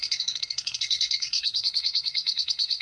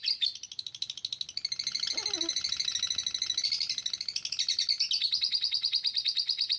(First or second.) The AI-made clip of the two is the first